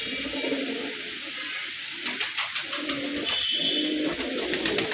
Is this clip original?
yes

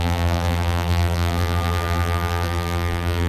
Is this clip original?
no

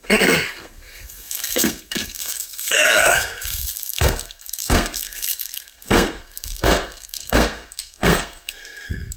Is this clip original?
no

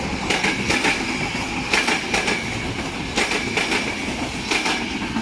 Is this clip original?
yes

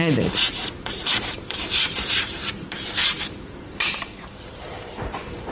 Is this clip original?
no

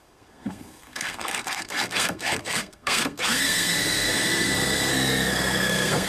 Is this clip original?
no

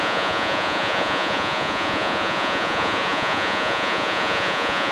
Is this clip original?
no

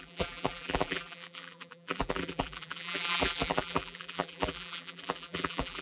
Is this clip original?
no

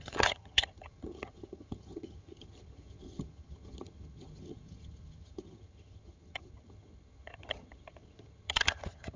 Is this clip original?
no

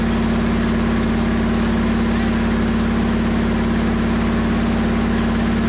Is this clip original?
yes